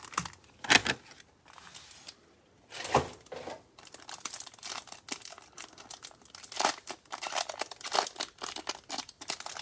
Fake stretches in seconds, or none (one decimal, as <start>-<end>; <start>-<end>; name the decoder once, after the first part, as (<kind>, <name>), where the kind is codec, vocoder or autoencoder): none